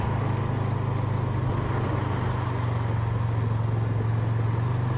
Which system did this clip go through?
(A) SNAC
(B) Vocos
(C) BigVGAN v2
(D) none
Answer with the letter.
D